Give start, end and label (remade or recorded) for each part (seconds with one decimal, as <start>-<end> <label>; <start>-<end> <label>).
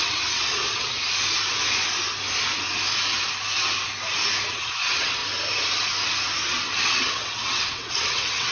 0.0-1.0 remade; 1.0-4.5 recorded; 4.5-5.2 remade; 5.2-6.9 recorded; 6.9-8.5 remade